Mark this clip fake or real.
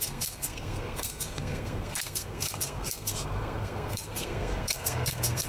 fake